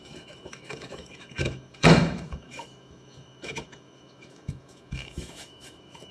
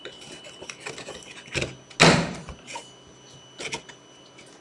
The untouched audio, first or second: second